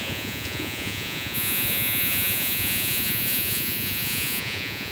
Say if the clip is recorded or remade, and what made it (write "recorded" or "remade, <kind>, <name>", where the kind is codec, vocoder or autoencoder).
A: remade, vocoder, Vocos